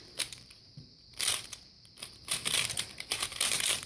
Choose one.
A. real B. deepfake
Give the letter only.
B